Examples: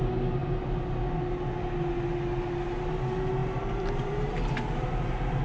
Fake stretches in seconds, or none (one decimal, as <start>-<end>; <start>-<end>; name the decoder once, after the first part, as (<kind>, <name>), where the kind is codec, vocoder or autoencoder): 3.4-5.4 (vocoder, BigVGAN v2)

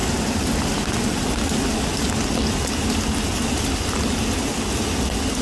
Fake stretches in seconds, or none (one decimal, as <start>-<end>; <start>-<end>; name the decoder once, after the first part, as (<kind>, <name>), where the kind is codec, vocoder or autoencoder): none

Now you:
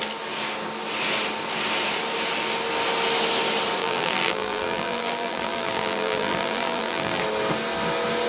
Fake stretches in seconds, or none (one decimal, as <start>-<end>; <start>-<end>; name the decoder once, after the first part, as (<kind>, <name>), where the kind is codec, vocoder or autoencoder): 3.8-7.2 (vocoder, BigVGAN v2)

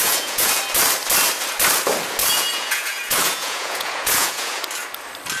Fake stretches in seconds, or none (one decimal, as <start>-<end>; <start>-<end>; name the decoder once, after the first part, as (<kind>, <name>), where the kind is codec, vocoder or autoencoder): 0.0-0.6 (vocoder, Vocos); 2.2-4.6